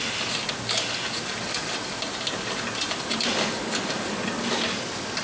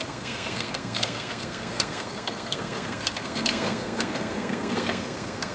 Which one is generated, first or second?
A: second